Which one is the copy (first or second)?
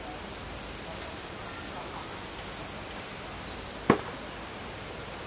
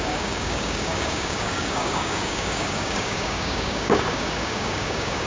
second